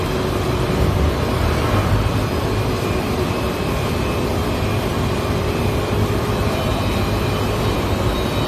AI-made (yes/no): yes